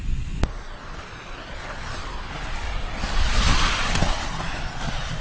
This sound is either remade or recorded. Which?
recorded